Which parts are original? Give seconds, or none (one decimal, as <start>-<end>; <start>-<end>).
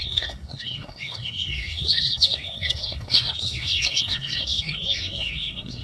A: none